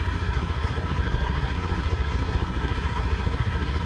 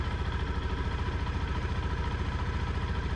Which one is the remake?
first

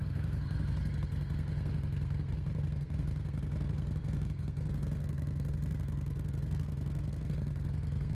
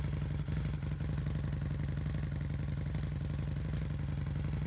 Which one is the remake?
first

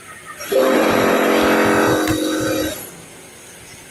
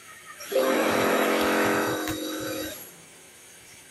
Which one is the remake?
second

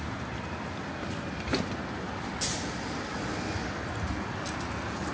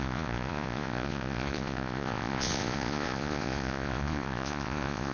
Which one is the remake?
second